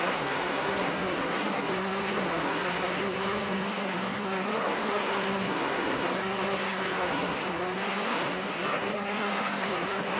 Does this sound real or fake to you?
fake